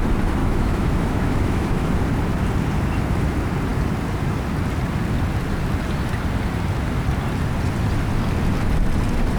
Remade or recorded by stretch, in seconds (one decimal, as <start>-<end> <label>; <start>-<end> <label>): 0.0-0.4 recorded; 0.4-1.9 remade; 1.9-9.4 recorded